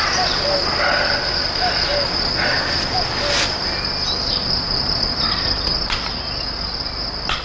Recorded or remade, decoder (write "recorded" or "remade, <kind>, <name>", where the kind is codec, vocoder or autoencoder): recorded